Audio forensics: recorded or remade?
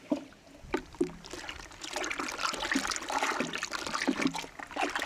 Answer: recorded